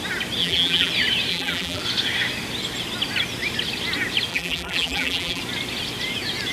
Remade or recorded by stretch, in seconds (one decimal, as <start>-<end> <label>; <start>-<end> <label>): 0.0-0.4 recorded; 0.4-0.9 remade; 0.9-1.3 recorded; 1.3-1.8 remade; 1.8-4.3 recorded; 4.3-5.4 remade; 5.4-6.5 recorded